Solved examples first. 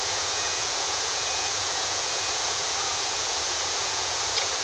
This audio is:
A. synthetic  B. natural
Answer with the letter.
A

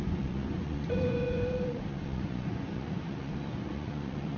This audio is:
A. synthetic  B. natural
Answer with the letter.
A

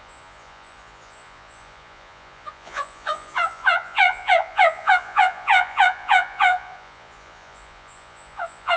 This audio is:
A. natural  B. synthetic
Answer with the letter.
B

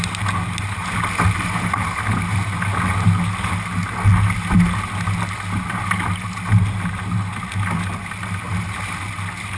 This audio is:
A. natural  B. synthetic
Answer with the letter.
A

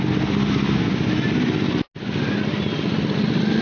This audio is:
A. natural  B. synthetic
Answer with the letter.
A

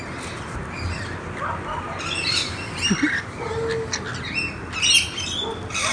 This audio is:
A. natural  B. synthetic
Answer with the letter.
A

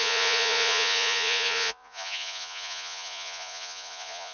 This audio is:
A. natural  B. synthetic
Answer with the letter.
B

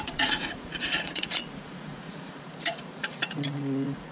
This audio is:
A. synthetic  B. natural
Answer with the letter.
A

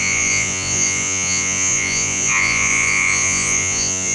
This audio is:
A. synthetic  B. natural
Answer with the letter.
A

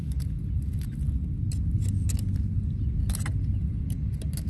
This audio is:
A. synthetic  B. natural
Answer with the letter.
B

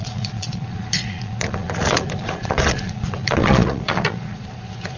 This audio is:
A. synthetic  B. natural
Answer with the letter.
A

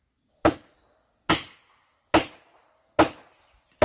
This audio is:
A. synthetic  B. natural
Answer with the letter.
B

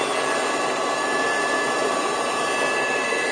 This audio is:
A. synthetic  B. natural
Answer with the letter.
B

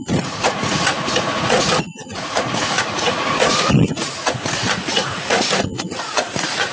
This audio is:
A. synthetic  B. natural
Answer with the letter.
A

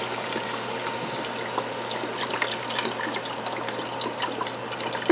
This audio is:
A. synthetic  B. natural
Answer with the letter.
B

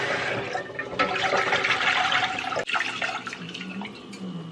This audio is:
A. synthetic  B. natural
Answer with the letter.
B